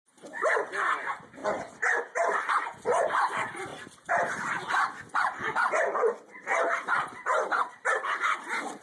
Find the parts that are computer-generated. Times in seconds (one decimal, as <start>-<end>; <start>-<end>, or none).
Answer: 0.0-8.8